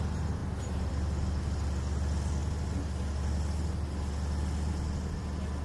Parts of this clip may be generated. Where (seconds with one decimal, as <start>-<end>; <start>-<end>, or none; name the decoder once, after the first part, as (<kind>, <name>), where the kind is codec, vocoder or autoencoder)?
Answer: none